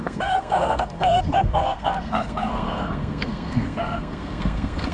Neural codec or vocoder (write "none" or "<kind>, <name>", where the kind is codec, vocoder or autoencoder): codec, SNAC